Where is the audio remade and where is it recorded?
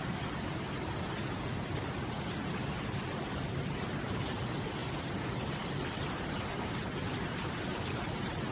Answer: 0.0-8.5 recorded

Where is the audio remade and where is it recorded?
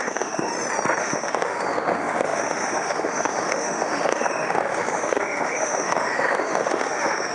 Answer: 0.0-0.5 remade; 0.5-1.0 recorded; 1.0-7.3 remade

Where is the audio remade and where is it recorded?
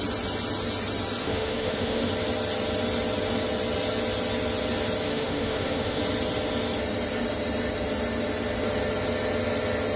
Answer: 0.0-1.2 recorded; 1.2-2.1 remade; 2.1-5.1 recorded; 5.1-6.0 remade; 6.0-10.0 recorded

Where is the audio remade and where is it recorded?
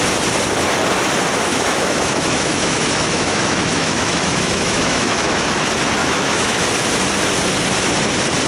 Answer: 0.0-1.5 recorded; 1.5-5.6 remade; 5.6-6.0 recorded; 6.0-6.6 remade; 6.6-8.5 recorded